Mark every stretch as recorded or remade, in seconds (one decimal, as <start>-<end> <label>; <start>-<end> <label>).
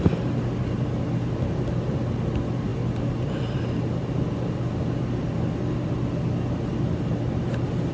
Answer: 0.0-7.9 recorded